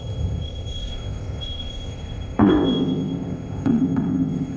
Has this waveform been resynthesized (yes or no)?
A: yes